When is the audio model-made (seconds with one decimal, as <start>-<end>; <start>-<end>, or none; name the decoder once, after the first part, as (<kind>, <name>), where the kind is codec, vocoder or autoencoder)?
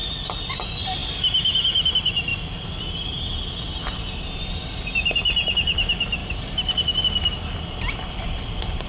none